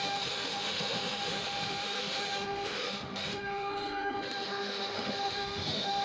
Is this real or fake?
fake